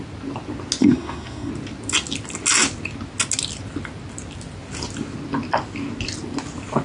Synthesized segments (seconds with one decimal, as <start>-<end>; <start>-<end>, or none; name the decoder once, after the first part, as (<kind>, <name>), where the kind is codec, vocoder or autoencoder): 0.8-1.5 (codec, SNAC)